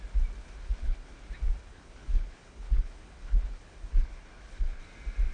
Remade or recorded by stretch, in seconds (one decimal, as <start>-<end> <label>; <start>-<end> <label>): 0.0-0.4 recorded; 0.4-1.1 remade; 1.1-1.6 recorded; 1.6-4.8 remade; 4.8-5.3 recorded